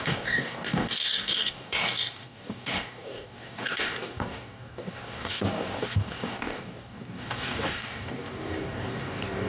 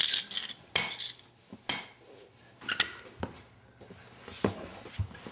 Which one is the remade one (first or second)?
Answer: first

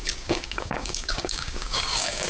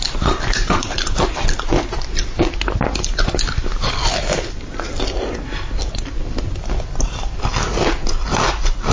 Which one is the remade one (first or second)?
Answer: first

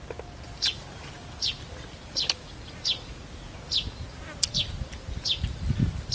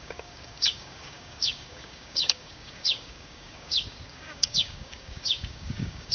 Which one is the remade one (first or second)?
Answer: second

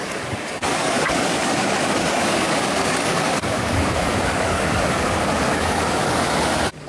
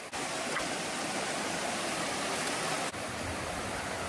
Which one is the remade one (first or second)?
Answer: first